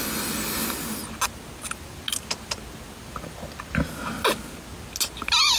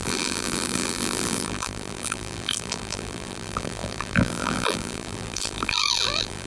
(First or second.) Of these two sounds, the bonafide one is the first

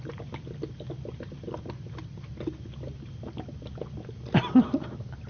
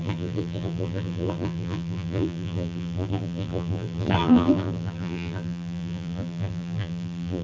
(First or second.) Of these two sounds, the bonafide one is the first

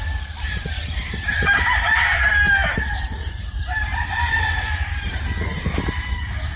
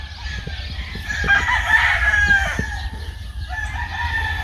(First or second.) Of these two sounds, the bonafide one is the second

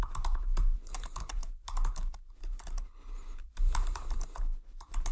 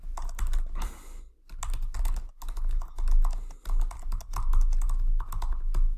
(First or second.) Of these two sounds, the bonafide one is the second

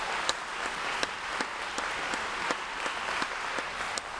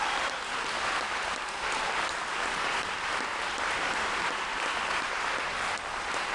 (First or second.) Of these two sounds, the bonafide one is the first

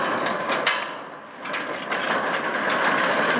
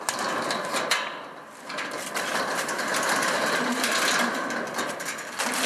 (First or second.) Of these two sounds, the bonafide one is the first